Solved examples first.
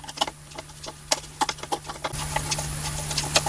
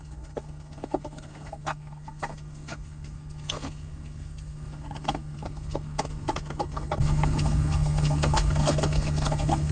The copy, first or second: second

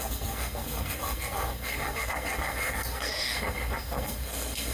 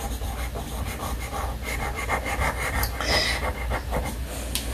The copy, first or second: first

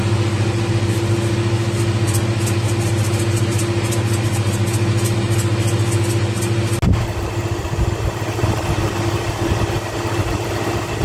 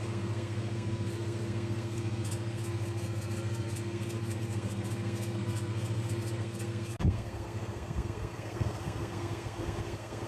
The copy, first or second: second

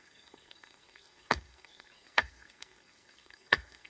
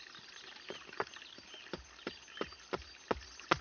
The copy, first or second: first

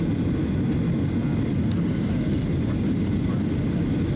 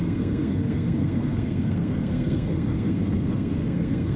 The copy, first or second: second